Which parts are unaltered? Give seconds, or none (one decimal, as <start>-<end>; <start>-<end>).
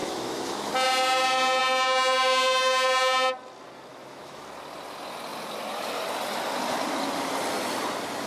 0.7-3.9; 4.4-8.3